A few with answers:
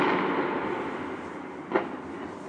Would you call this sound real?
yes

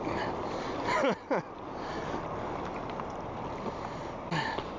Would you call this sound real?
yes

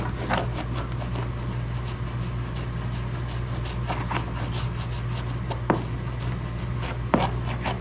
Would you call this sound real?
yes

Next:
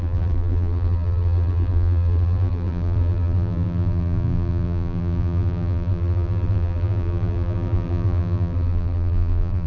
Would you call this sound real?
no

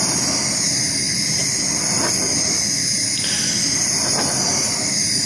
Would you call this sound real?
yes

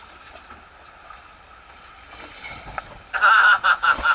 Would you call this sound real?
yes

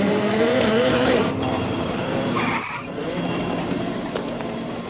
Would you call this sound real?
no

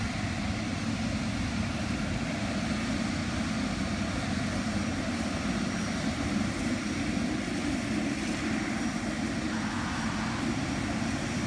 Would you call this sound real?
yes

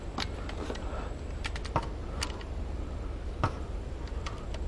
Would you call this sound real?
yes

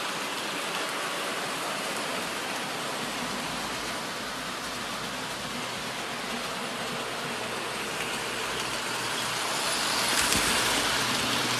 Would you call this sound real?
yes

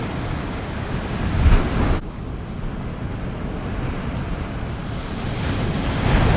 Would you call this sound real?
yes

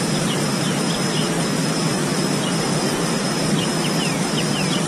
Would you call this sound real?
no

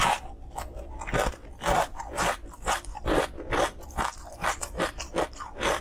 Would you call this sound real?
yes